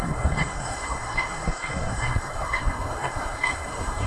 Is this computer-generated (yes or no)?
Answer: yes